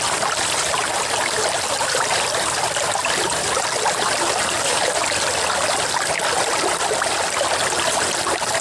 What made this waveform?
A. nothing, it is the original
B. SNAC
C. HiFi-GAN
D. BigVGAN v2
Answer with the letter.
A